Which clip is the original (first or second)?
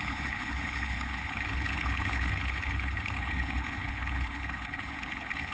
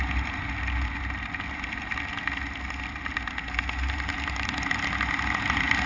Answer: second